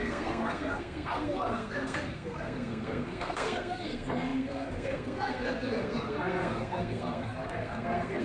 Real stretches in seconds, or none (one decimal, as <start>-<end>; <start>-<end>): none